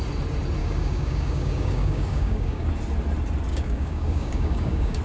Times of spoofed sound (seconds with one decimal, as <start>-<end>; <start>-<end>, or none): 0.6-2.7; 3.5-5.0